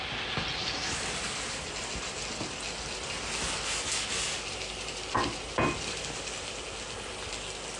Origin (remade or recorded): recorded